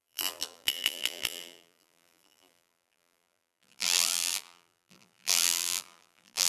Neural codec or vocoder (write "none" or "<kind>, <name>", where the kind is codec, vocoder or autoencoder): vocoder, BigVGAN v2